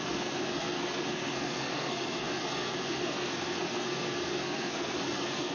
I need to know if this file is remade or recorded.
remade